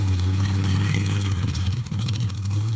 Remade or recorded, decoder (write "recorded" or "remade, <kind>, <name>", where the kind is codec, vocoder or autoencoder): remade, codec, SNAC